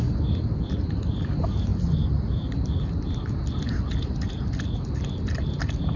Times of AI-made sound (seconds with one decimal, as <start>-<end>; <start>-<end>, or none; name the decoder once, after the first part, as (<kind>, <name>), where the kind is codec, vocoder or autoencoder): none

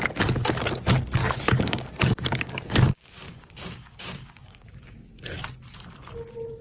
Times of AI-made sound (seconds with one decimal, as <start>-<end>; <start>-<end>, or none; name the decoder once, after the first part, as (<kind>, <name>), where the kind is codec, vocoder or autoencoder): 1.2-5.2 (codec, DAC)

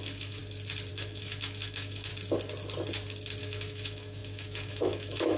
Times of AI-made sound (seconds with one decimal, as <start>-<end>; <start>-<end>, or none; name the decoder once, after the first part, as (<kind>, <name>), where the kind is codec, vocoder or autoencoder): 0.0-0.4 (autoencoder, DAC-VAE); 0.9-2.1; 3.4-5.4

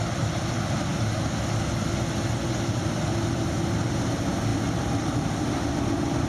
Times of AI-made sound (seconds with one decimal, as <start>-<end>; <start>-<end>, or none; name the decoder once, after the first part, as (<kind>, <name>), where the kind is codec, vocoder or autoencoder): none

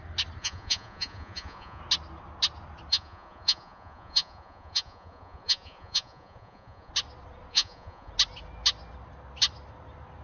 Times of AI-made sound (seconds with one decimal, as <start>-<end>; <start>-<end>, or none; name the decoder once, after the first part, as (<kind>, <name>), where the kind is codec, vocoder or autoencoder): 0.4-1.8 (vocoder, Vocos); 2.9-6.9; 7.5-8.1

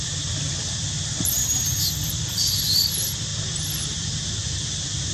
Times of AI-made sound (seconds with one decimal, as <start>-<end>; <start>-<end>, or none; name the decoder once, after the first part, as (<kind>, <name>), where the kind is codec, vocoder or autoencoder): 0.0-1.4 (vocoder, BigVGAN v2); 2.3-3.3; 3.8-5.1

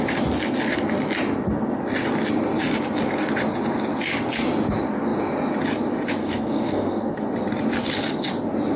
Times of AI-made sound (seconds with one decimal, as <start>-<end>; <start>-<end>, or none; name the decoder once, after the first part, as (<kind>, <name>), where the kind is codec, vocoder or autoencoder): 6.2-7.2 (codec, SNAC)